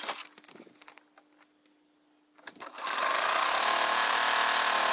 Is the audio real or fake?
real